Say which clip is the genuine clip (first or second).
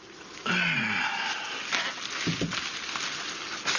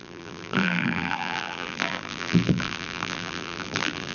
first